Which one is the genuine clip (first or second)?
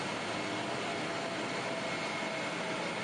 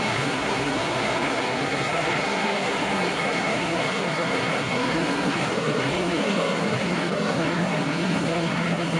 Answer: first